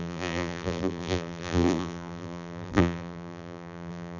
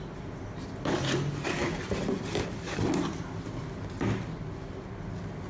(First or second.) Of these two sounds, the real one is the second